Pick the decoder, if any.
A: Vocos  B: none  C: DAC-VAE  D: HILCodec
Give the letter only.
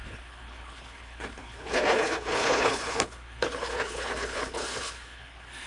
D